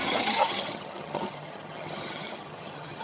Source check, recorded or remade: remade